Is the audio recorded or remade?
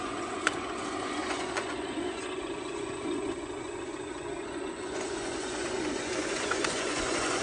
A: remade